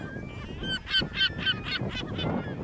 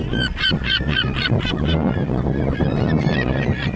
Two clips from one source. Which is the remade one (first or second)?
second